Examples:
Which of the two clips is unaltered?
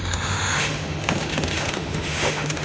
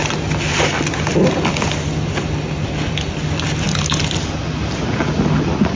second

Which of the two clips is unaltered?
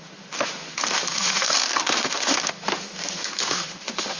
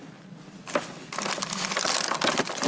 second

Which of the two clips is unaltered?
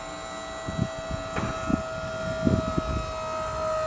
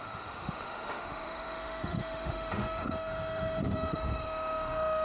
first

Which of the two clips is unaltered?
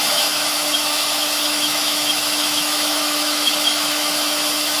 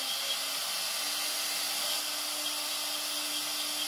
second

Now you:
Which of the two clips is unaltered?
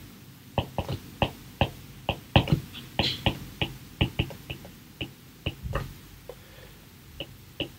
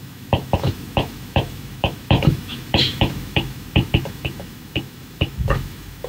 first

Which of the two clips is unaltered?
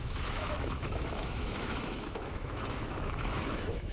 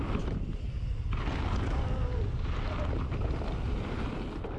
second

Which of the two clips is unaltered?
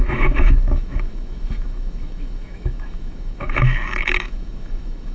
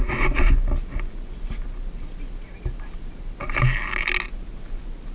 second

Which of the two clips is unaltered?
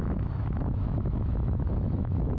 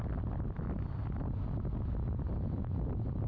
second